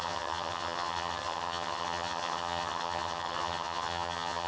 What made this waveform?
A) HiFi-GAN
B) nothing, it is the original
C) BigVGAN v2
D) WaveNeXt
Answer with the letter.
A